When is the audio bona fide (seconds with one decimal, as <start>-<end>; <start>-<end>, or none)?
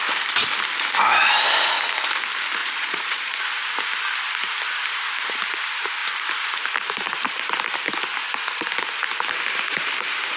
0.0-2.6; 3.4-10.4